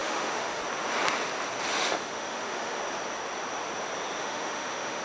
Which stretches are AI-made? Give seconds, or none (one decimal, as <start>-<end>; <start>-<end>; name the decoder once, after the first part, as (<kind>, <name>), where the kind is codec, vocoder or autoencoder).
0.0-0.6 (autoencoder, DAC-VAE); 1.7-2.8; 4.2-5.0